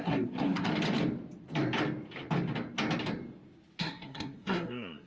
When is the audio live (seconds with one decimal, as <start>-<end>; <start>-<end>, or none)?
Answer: 0.7-3.8

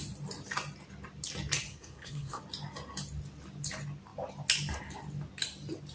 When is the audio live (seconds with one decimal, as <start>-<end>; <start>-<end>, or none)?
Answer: 0.0-1.7; 2.4-5.9